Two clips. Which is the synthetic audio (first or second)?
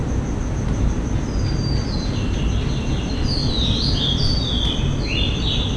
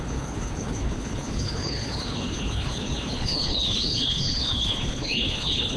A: second